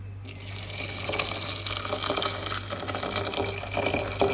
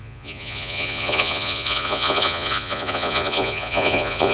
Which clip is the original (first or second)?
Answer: first